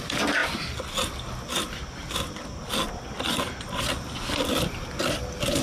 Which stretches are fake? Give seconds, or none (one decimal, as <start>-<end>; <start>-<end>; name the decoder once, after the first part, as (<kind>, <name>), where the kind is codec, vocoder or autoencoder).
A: none